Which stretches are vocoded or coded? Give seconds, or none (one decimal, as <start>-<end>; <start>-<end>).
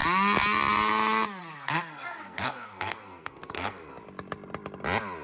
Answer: 1.4-3.9